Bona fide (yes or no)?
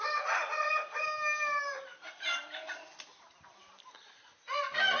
yes